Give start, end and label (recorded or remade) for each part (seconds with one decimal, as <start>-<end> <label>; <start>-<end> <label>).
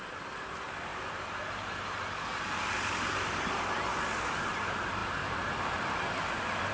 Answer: 0.0-6.7 recorded